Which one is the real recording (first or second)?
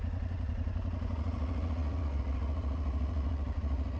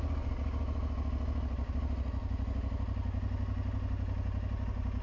second